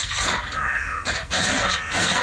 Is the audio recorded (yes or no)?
no